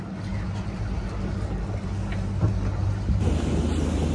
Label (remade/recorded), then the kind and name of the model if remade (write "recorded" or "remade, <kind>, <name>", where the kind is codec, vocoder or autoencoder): recorded